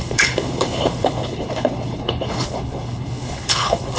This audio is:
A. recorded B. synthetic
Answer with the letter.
B